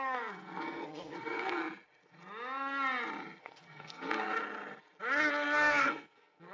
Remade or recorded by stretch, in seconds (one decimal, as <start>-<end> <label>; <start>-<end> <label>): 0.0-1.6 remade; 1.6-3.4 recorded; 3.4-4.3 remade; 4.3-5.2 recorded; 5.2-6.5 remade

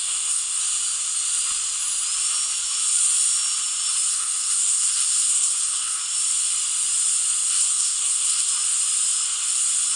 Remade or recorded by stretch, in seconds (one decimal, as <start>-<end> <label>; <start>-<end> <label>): 0.0-0.6 remade; 0.6-4.1 recorded; 4.1-6.0 remade; 6.0-7.4 recorded; 7.4-8.5 remade; 8.5-10.0 recorded

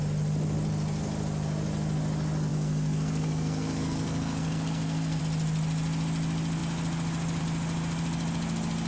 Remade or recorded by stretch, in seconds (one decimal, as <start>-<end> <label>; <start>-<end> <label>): 0.0-2.5 recorded; 2.5-5.2 remade; 5.2-8.9 recorded

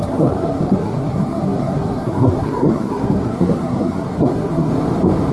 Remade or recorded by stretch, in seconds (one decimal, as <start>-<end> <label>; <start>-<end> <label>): 0.0-4.7 remade; 4.7-5.3 recorded

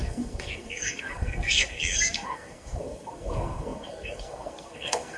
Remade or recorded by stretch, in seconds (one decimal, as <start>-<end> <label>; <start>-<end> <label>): 0.0-5.2 remade